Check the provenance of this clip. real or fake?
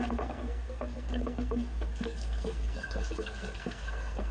fake